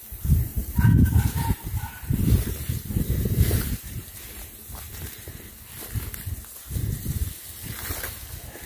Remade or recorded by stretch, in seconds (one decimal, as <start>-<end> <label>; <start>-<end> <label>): 0.0-0.5 recorded; 0.5-5.5 remade; 5.5-8.7 recorded